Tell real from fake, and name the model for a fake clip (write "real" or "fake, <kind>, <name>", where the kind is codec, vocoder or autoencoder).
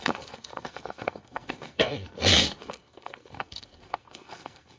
fake, codec, SNAC